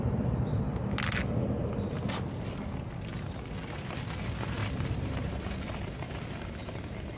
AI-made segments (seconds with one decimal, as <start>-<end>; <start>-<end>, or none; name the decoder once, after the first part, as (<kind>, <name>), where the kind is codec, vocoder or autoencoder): 3.1-3.8 (vocoder, BigVGAN v2); 4.6-6.6